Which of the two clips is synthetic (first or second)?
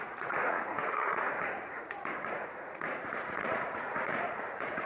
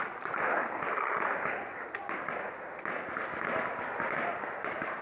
first